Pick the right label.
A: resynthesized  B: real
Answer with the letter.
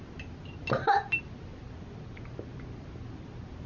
B